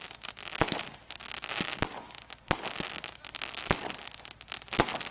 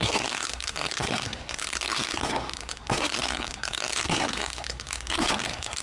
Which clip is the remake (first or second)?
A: second